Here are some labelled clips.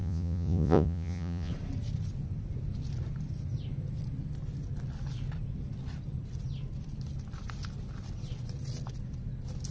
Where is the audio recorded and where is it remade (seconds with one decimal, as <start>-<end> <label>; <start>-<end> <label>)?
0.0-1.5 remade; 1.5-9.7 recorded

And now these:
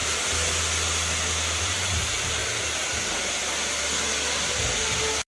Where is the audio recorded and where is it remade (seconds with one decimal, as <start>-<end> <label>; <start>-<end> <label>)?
0.0-5.4 recorded

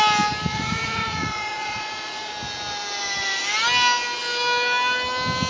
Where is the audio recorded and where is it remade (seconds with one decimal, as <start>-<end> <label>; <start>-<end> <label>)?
0.0-0.5 recorded; 0.5-2.3 remade; 2.3-5.5 recorded